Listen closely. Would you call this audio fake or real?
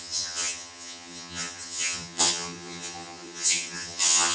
fake